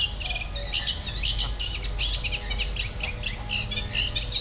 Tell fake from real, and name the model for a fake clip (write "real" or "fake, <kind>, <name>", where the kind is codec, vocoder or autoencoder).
real